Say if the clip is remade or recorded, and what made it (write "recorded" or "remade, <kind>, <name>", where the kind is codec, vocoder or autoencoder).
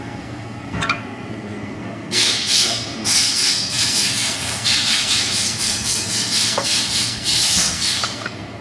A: remade, codec, SNAC